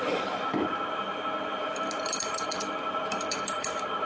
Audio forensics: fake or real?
fake